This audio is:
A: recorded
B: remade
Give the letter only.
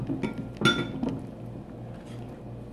A